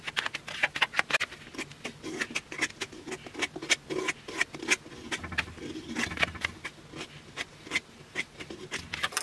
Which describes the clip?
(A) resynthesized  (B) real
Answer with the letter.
B